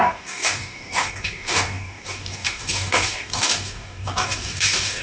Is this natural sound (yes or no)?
no